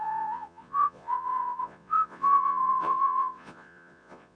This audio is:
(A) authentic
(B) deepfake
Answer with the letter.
B